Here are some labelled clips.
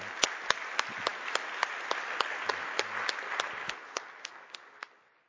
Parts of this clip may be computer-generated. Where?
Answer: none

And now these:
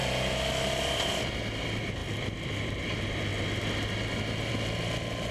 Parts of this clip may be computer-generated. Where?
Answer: 2.0-2.8 (vocoder, BigVGAN v2)